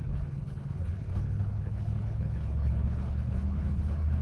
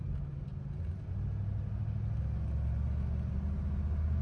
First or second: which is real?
second